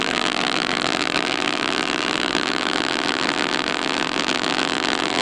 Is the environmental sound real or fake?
fake